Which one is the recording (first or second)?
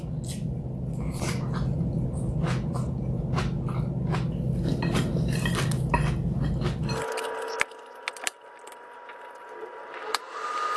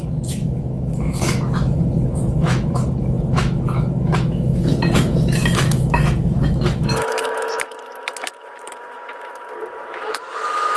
first